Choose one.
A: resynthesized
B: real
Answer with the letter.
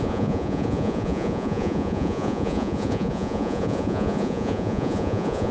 A